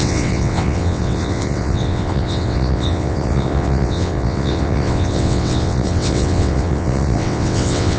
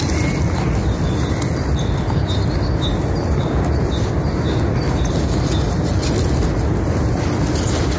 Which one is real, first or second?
second